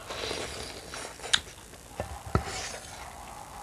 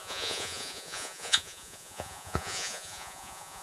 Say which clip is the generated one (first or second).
second